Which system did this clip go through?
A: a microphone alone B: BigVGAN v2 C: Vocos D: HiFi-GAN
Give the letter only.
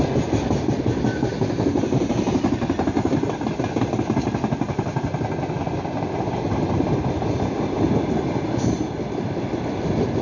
A